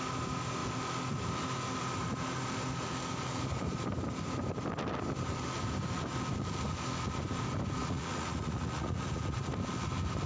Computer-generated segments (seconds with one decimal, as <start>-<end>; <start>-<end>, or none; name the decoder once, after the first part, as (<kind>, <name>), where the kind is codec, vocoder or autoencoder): 7.8-9.5 (vocoder, Vocos)